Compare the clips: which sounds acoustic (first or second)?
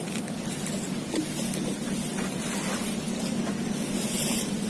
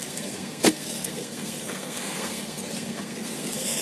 first